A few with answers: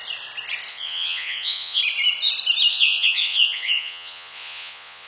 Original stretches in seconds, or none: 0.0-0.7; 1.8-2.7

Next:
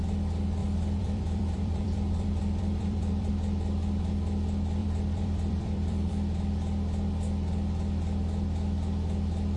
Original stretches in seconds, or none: 0.0-0.6; 3.3-4.8; 6.1-9.6

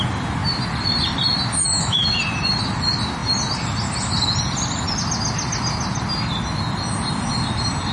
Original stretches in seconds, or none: 0.0-1.6; 2.2-7.9